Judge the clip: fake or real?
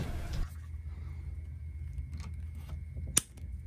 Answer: real